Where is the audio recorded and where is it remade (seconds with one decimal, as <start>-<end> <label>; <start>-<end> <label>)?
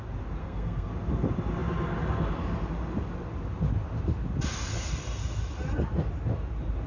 0.0-0.4 recorded; 0.4-0.9 remade; 0.9-6.9 recorded